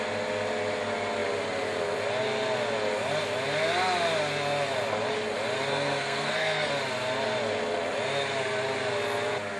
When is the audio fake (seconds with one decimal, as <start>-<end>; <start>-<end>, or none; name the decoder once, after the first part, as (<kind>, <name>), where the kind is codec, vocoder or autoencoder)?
5.7-6.7 (codec, SNAC)